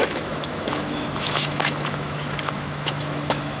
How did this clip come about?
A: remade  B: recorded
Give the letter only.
A